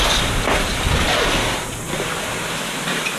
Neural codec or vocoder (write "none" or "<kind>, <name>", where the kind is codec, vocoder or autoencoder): none